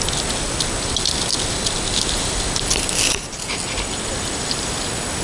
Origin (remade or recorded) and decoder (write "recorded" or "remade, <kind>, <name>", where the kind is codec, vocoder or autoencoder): recorded